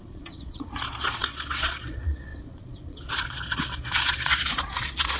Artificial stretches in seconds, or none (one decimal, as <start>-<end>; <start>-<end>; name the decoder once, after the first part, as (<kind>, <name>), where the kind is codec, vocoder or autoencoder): 0.0-5.2 (vocoder, Vocos)